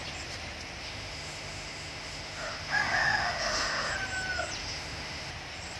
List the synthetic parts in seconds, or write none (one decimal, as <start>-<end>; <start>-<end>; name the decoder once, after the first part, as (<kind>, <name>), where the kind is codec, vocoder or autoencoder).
0.8-3.9 (autoencoder, DAC-VAE); 4.6-5.3